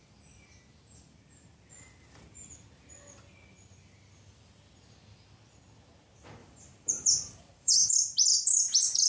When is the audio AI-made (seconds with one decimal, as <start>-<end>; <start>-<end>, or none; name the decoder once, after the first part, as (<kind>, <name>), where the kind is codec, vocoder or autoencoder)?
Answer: 6.4-7.9 (vocoder, BigVGAN v2); 8.3-9.1